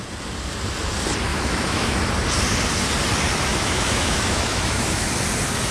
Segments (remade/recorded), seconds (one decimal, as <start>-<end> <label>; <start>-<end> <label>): 0.0-1.3 recorded; 1.3-2.0 remade; 2.0-3.5 recorded; 3.5-5.1 remade; 5.1-5.7 recorded